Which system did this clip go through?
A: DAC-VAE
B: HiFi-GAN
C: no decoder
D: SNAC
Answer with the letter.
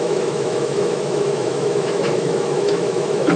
A